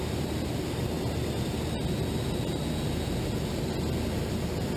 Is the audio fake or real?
real